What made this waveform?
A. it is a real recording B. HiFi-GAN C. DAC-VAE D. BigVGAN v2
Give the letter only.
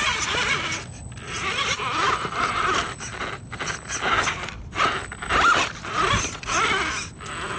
A